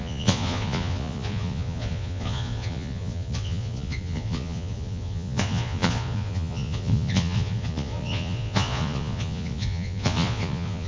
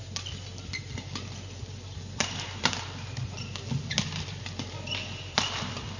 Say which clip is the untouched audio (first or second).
second